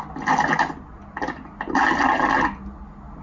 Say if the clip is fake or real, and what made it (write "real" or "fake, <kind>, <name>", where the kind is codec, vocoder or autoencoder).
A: real